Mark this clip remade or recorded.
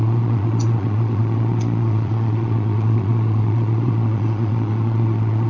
remade